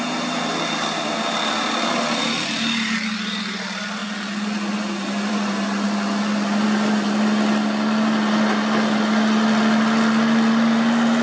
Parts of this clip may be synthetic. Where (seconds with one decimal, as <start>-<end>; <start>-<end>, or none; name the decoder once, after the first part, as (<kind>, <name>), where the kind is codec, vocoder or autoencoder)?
none